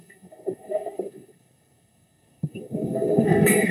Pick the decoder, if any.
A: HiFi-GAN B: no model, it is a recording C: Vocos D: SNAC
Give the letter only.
D